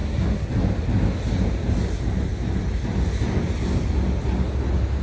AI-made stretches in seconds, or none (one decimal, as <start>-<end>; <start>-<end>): 0.0-0.5